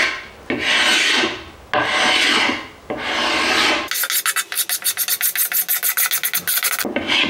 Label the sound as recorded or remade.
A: recorded